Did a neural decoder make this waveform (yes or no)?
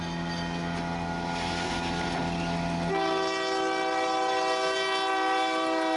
no